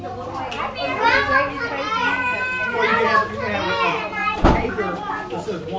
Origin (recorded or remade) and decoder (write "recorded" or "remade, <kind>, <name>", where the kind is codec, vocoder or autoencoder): recorded